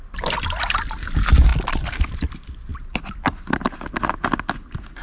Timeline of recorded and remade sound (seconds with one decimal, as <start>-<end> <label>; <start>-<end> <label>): 0.0-5.0 recorded